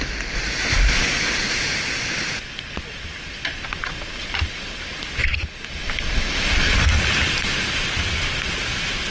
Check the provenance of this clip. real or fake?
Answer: real